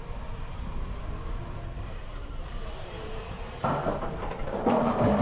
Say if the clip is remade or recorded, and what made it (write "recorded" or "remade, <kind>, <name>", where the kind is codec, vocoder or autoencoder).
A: remade, vocoder, BigVGAN v2